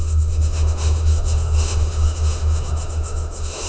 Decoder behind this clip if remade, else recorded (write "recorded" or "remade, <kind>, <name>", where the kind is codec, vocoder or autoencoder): remade, autoencoder, DAC-VAE